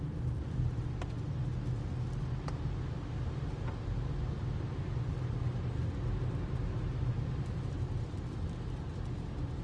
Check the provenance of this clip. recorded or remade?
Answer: recorded